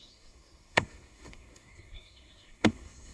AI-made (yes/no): yes